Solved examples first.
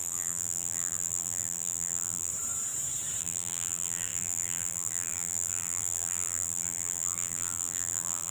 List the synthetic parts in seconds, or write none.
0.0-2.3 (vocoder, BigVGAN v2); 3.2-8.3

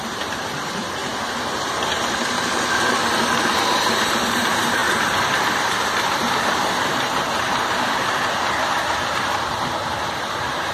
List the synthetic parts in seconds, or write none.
0.0-1.0 (vocoder, BigVGAN v2); 3.5-4.8; 5.4-10.7

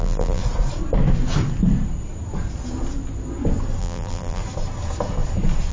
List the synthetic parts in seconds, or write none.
0.0-0.4 (vocoder, BigVGAN v2); 3.8-4.4

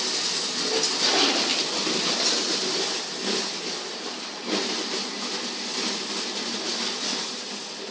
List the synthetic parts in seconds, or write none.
none

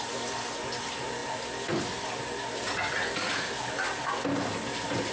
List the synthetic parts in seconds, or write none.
none

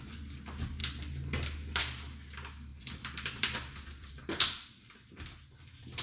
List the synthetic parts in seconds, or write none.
2.7-4.2 (vocoder, BigVGAN v2)